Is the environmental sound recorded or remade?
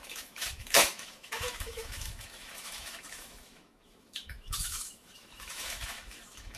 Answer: remade